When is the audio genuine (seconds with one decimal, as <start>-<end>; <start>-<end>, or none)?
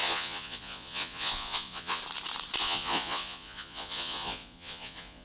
2.0-2.6